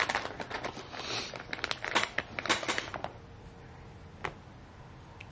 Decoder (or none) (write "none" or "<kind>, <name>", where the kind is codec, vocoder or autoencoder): none